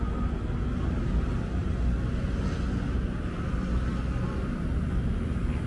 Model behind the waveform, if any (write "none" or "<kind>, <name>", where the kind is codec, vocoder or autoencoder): none